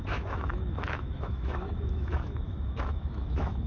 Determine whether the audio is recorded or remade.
remade